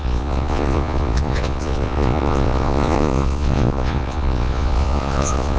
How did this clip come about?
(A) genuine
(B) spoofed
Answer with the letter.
B